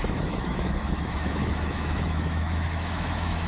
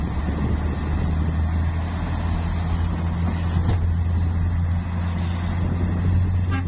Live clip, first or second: second